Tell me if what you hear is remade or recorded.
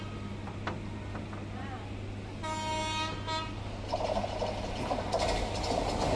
recorded